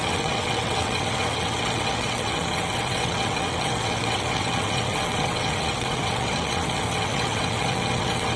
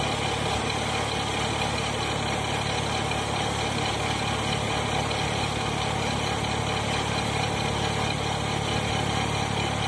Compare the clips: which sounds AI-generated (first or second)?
first